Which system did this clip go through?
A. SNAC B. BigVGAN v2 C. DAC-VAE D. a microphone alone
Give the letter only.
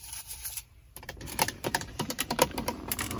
B